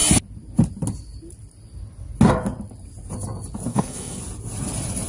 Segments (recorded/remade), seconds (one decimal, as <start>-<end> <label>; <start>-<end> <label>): 0.0-3.7 recorded; 3.7-4.2 remade; 4.2-5.1 recorded

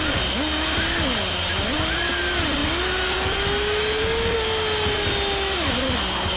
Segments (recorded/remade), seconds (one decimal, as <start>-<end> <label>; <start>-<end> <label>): 0.0-6.4 recorded

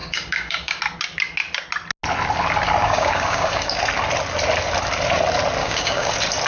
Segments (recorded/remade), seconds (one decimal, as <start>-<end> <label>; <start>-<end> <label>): 0.0-0.8 remade; 0.8-2.8 recorded; 2.8-3.8 remade; 3.8-5.6 recorded; 5.6-6.1 remade; 6.1-6.5 recorded

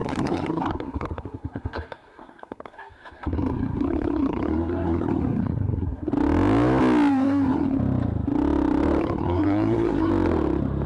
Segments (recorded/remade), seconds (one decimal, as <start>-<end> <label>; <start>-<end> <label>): 0.0-6.1 remade; 6.1-7.1 recorded; 7.1-7.8 remade; 7.8-9.0 recorded; 9.0-10.1 remade; 10.1-10.9 recorded